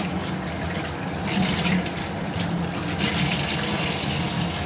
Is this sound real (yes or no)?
yes